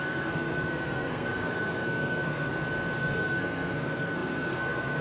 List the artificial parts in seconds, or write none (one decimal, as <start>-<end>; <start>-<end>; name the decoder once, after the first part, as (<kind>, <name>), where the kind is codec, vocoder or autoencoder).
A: 0.0-2.5 (codec, SNAC); 3.0-5.0